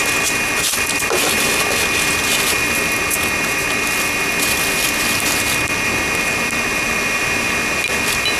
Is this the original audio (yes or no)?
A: yes